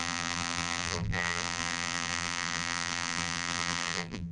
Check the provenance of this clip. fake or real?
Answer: fake